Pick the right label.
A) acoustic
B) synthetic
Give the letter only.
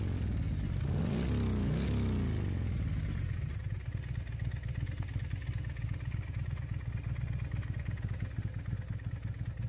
A